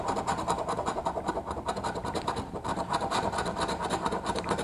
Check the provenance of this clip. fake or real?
real